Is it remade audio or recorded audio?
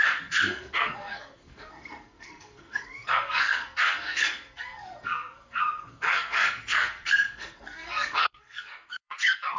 remade